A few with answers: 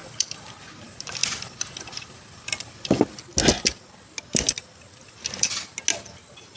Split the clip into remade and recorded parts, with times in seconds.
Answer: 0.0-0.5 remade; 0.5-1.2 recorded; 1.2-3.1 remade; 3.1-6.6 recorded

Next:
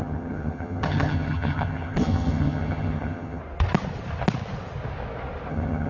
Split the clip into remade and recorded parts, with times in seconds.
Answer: 0.0-3.4 remade; 3.4-5.5 recorded; 5.5-5.9 remade

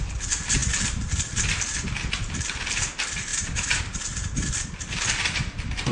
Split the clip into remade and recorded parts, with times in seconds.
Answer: 0.0-3.3 recorded; 3.3-3.8 remade; 3.8-5.9 recorded

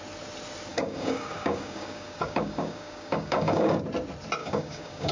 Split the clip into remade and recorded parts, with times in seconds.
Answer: 0.0-0.7 recorded; 0.7-3.8 remade; 3.8-4.4 recorded; 4.4-5.1 remade

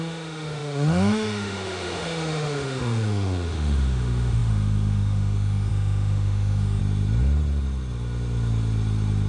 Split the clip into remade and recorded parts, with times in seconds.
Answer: 0.0-6.8 remade; 6.8-9.3 recorded